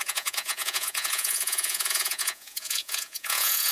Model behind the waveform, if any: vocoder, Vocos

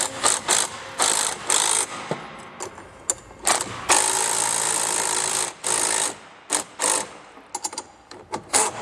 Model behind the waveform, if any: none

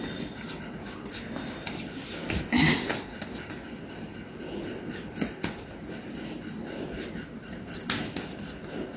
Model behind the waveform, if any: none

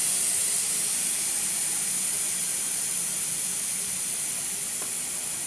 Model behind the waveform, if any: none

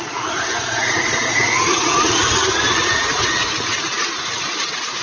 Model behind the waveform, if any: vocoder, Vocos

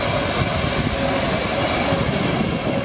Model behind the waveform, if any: none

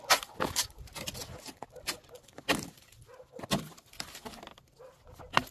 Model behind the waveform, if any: none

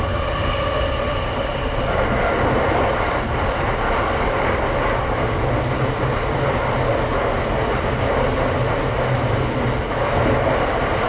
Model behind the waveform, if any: none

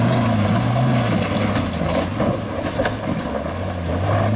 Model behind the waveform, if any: none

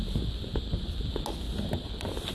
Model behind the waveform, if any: none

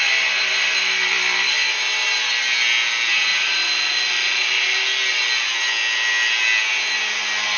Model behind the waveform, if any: none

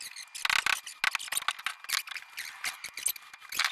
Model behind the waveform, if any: none